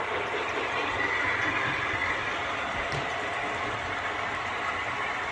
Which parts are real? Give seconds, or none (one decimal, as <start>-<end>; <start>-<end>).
0.0-5.3